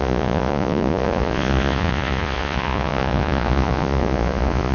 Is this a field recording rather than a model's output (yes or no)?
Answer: no